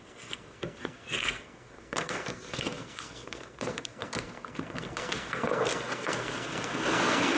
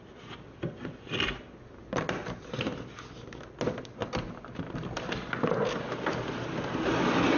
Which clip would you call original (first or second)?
second